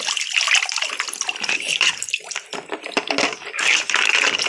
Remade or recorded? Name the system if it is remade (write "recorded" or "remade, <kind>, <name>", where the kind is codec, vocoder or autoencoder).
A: recorded